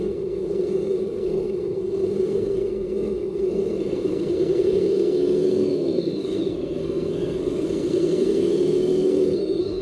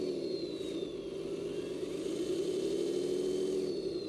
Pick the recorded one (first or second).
second